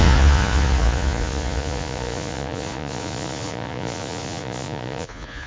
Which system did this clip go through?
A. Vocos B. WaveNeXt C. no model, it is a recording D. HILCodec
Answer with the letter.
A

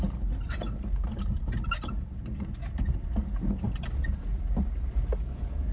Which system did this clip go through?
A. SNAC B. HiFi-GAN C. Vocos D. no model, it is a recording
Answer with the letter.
D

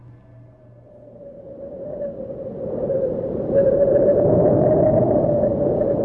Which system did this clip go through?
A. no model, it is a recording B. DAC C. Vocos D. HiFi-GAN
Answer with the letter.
A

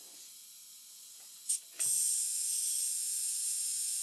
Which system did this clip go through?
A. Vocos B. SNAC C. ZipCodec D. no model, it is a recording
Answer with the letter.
A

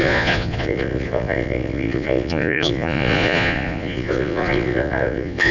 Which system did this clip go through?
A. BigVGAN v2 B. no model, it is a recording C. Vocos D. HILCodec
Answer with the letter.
C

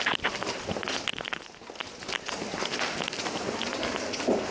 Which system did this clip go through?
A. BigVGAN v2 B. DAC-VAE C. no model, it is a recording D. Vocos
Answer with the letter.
C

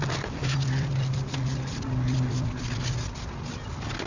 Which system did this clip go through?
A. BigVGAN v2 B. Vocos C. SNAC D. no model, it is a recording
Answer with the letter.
D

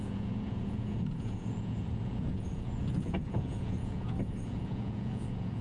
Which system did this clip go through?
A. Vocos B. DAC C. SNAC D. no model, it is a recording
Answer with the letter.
A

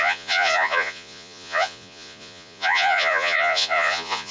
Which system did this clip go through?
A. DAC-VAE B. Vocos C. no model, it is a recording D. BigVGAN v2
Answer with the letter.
B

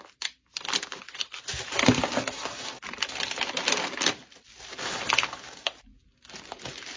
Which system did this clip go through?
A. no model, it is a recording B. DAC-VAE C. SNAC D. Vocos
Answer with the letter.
A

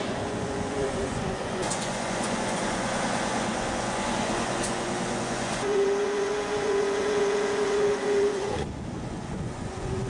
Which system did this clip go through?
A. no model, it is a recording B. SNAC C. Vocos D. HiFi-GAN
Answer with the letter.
C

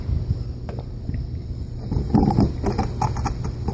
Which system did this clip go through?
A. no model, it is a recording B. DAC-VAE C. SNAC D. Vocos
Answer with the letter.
A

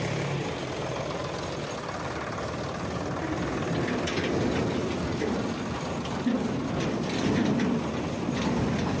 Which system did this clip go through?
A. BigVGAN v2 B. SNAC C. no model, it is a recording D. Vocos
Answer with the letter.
C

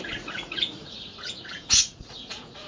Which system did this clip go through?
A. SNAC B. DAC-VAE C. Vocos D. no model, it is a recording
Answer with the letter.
C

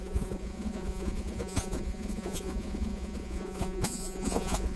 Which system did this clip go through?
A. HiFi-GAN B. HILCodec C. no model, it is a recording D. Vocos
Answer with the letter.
D